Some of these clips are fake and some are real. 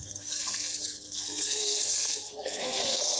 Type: fake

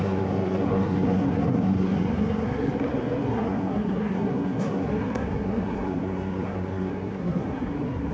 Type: fake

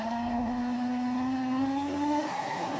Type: fake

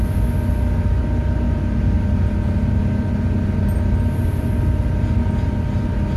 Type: real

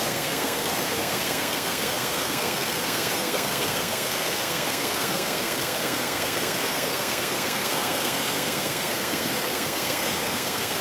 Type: fake